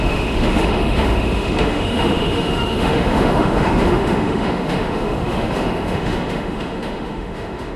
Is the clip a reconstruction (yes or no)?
yes